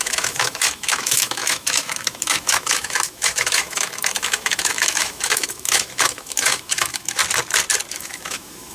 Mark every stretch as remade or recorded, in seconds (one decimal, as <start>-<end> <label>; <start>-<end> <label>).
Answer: 0.0-7.2 remade; 7.2-7.9 recorded; 7.9-8.7 remade